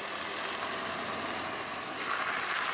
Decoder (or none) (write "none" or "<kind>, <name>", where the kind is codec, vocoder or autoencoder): none